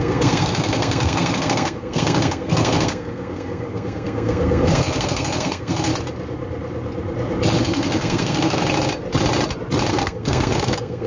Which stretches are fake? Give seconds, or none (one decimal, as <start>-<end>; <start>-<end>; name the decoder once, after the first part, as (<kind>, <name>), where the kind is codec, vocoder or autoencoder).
0.0-5.9 (codec, SNAC); 7.6-8.6; 9.9-11.1